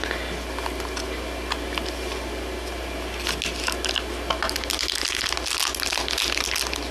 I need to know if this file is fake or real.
real